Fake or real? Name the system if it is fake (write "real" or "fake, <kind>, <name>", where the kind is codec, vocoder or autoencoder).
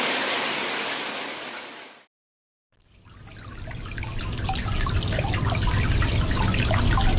real